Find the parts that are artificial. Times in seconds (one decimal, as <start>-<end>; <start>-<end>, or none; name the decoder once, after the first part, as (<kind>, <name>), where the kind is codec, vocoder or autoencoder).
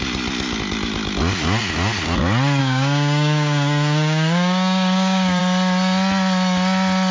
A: 2.6-5.4 (codec, DAC)